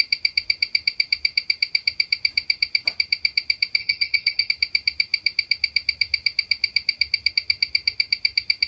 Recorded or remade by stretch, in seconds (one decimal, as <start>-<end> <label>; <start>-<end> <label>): 0.0-3.8 recorded; 3.8-4.5 remade; 4.5-8.7 recorded